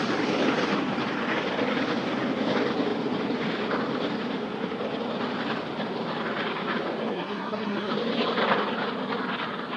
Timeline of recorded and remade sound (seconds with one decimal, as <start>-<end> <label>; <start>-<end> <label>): 0.0-7.0 recorded; 7.0-7.9 remade; 7.9-9.8 recorded